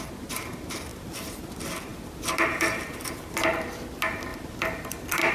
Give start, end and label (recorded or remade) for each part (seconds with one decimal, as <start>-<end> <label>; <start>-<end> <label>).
0.0-0.9 recorded; 0.9-1.5 remade; 1.5-1.9 recorded; 1.9-3.3 remade; 3.3-4.3 recorded; 4.3-5.3 remade